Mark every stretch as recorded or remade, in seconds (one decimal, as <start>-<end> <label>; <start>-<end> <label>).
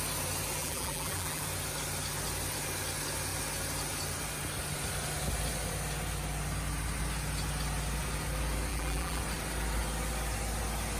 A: 0.0-0.6 recorded; 0.6-1.4 remade; 1.4-8.7 recorded; 8.7-9.2 remade; 9.2-11.0 recorded